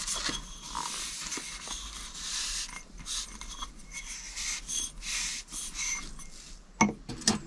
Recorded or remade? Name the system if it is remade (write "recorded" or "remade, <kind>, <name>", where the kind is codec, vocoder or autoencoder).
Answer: recorded